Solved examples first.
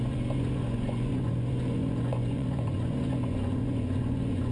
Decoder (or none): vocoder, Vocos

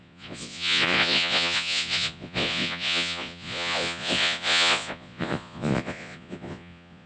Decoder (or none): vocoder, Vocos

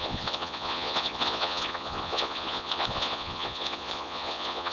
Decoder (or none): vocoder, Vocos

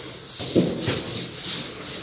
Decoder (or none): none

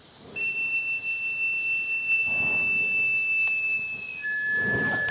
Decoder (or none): none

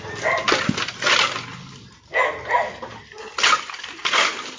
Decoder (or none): none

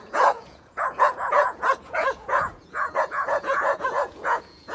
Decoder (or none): vocoder, Vocos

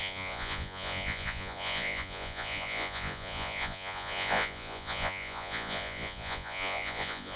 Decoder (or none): vocoder, Vocos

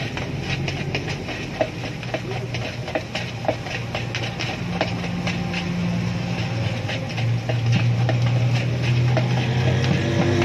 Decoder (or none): none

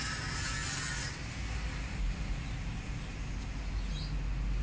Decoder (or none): none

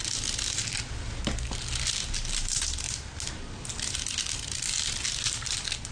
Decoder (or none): none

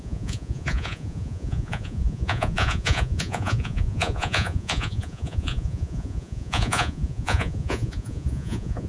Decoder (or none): vocoder, Vocos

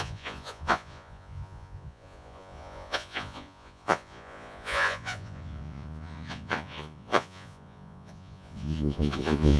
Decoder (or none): vocoder, Vocos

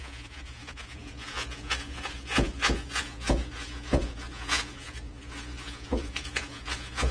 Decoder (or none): vocoder, Vocos